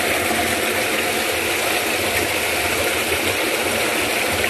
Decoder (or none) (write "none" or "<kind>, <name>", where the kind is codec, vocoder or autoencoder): none